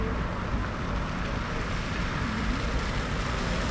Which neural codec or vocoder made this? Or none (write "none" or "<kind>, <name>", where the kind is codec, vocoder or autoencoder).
none